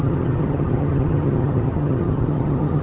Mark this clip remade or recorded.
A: remade